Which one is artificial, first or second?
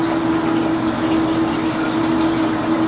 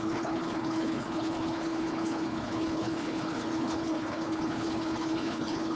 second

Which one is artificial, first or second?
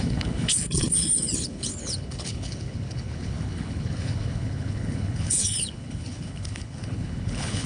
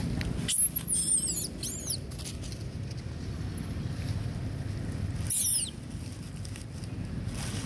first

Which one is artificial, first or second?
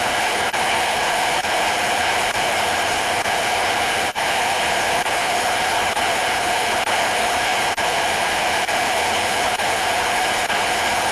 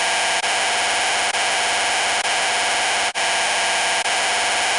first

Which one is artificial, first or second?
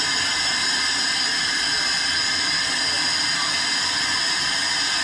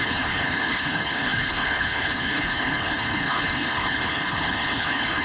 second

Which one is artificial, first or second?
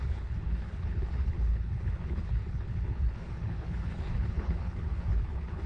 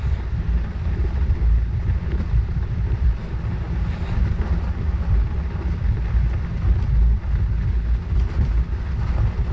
first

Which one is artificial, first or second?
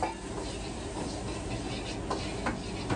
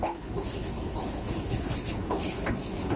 second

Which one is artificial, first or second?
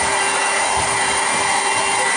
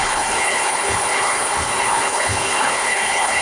second